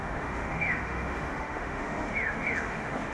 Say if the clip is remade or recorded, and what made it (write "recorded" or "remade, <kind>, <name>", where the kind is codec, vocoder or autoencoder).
remade, autoencoder, DAC-VAE